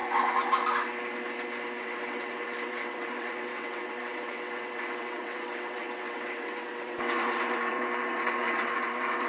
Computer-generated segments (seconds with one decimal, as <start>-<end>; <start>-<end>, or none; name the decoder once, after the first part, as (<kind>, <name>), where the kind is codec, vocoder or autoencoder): 1.8-9.3 (vocoder, WaveNeXt)